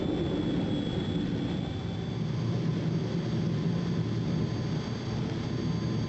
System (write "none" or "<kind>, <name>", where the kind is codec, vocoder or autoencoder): none